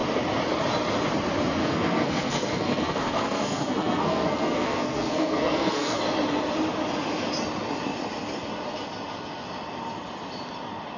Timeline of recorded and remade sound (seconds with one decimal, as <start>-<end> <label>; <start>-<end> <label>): 0.0-1.6 recorded; 1.6-6.0 remade; 6.0-11.0 recorded